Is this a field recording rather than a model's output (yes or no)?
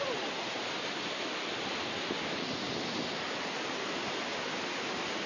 yes